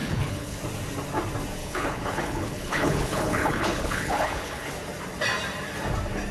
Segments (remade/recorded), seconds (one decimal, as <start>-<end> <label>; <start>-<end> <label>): 0.0-0.6 remade; 0.6-1.6 recorded; 1.6-4.7 remade; 4.7-6.3 recorded